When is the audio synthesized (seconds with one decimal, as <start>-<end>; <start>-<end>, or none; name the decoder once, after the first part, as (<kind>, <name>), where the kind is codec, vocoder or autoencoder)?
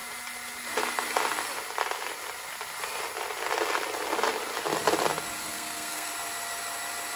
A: 5.4-6.1 (codec, SNAC)